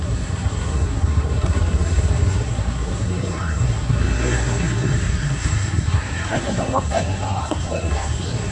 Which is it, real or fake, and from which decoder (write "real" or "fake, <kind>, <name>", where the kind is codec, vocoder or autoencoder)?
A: fake, codec, SNAC